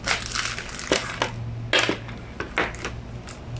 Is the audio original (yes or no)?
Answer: yes